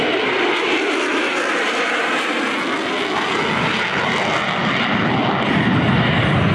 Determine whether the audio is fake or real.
real